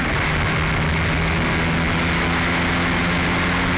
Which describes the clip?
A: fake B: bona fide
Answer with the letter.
B